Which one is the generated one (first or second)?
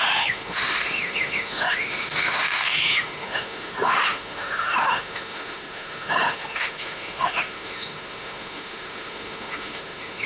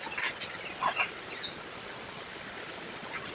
first